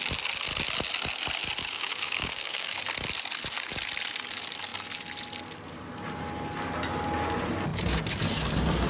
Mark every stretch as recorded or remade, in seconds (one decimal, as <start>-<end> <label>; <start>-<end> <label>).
0.0-1.6 recorded; 1.6-2.8 remade; 2.8-8.9 recorded